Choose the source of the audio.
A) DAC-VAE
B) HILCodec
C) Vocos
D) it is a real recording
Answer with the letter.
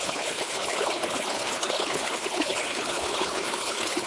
B